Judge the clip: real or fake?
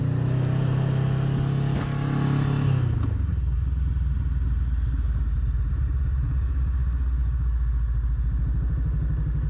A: real